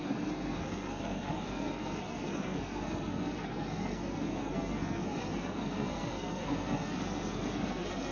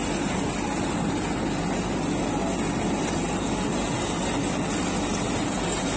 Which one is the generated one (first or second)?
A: first